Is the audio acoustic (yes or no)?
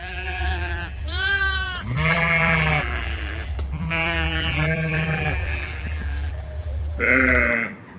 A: no